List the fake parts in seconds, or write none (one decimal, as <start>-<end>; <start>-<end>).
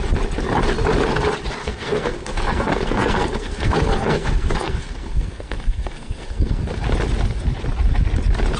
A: 1.6-6.6